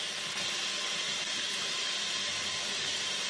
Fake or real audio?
real